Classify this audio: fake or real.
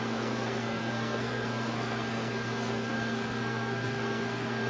fake